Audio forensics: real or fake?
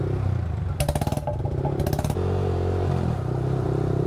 real